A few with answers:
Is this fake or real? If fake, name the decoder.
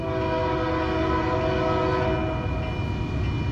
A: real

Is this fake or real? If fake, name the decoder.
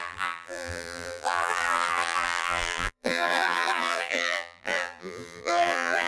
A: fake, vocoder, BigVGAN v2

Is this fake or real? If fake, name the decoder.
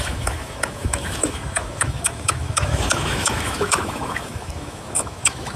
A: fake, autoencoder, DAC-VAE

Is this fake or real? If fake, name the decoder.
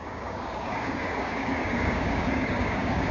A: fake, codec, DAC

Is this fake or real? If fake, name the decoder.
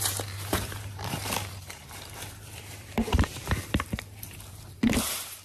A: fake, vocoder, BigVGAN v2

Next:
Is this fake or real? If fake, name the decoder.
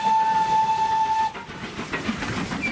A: real